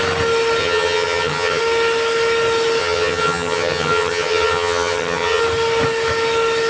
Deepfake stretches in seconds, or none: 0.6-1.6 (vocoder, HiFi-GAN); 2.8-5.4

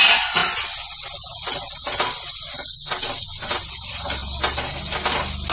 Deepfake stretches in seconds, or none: none

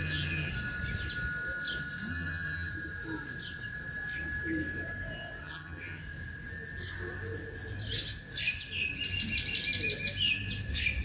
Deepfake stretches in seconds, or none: 0.0-0.5 (vocoder, HiFi-GAN); 2.1-2.7; 5.4-6.0

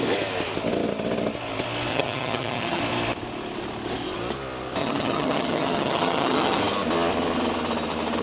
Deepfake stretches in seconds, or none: 1.9-2.8 (vocoder, HiFi-GAN); 4.8-6.6

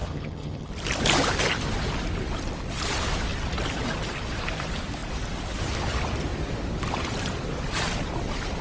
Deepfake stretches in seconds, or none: 0.0-0.7 (vocoder, HiFi-GAN)

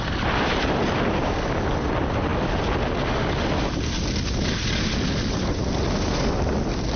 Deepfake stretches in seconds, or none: none